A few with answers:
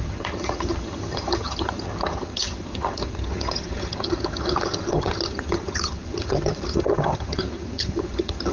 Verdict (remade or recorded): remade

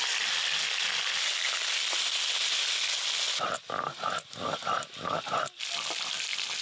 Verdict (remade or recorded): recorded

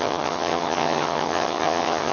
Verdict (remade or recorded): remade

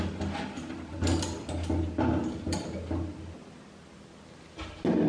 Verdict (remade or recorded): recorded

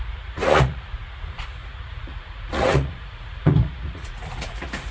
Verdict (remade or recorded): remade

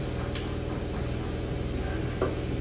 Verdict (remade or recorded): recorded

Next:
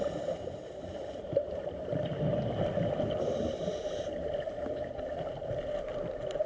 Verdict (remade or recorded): recorded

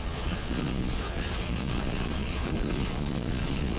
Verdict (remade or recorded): remade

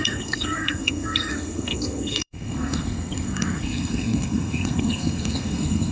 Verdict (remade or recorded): remade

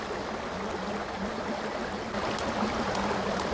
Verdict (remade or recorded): recorded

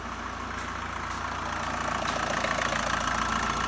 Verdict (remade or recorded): recorded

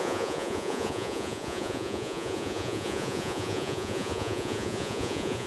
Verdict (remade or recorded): remade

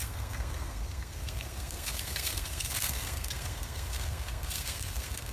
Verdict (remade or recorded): remade